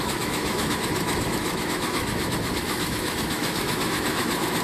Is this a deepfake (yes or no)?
yes